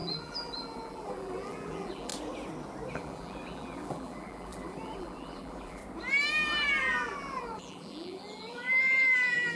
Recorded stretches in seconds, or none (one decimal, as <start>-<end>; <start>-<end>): 2.1-2.9; 5.8-6.8